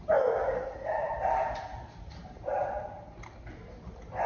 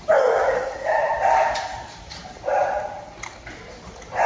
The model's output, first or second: second